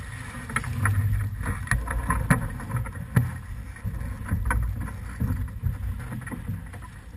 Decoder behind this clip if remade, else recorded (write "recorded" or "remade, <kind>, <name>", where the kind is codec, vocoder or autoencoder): recorded